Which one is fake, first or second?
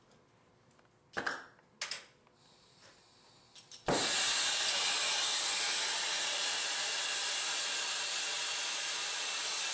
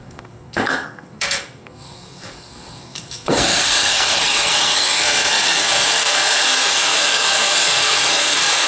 second